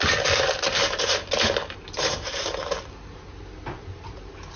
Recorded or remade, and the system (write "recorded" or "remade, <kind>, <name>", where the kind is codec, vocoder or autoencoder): recorded